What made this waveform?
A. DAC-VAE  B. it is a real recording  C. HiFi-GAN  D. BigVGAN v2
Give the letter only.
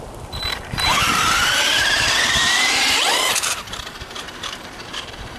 D